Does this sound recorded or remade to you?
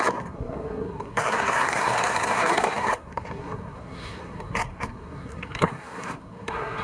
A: remade